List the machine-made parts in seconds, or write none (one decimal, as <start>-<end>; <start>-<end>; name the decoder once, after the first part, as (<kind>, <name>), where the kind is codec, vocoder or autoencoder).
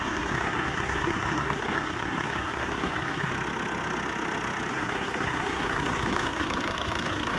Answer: 0.0-3.3 (codec, SNAC); 4.7-7.4